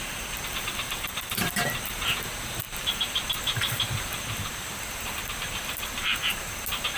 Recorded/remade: remade